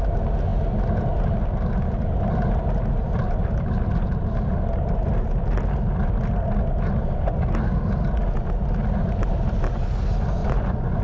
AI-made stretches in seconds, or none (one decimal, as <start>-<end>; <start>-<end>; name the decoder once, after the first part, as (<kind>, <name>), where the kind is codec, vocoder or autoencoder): 10.4-11.0 (vocoder, Vocos)